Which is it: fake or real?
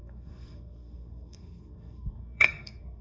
fake